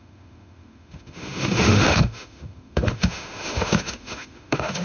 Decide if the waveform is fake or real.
fake